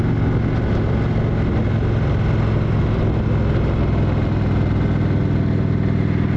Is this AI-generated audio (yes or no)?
no